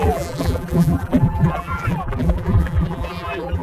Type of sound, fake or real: fake